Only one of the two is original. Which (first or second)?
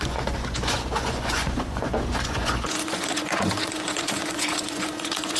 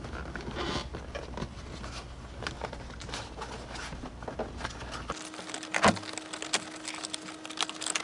second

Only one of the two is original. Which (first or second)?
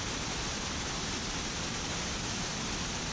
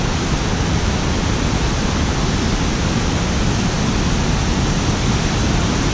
second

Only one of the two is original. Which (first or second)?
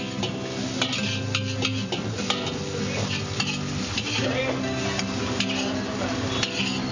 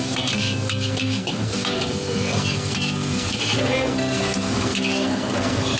first